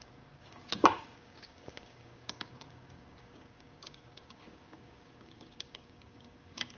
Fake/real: fake